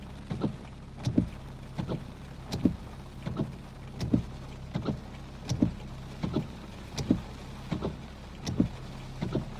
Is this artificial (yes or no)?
no